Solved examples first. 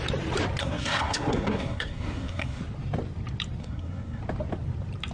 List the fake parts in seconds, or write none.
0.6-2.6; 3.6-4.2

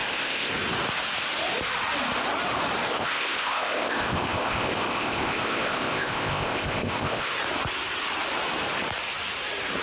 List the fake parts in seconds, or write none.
0.0-0.5; 2.9-7.3

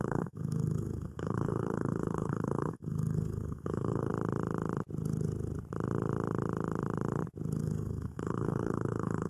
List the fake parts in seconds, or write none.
0.0-4.1; 7.6-9.3

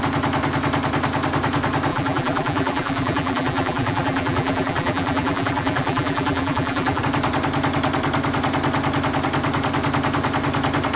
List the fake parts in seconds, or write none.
1.9-7.0

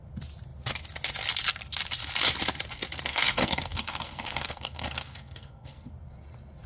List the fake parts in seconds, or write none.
3.1-5.9

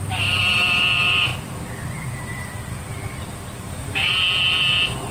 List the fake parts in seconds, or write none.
0.0-5.1